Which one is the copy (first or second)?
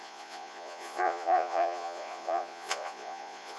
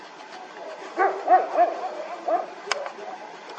first